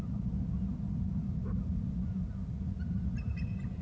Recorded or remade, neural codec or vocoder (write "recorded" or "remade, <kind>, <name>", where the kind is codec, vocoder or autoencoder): recorded